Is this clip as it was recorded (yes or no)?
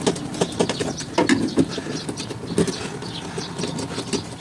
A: yes